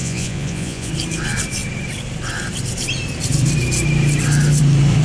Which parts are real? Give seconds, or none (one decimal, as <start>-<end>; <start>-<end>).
0.9-5.0